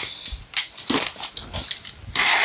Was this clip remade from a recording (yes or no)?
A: no